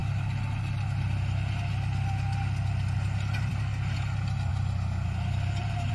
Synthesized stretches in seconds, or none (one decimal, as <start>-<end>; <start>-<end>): 4.5-5.9